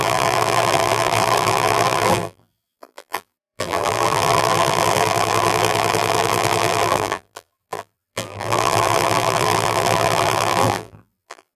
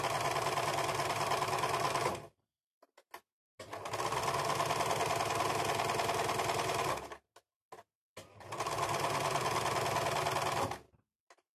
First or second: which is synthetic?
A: first